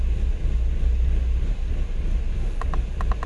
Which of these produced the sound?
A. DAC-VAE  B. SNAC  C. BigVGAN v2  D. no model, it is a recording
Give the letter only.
D